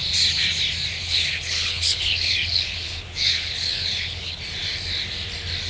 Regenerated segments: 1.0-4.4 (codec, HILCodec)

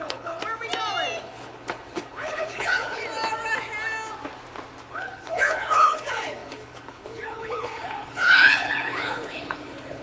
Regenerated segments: 0.0-0.4 (codec, HILCodec); 1.2-3.0; 4.9-10.0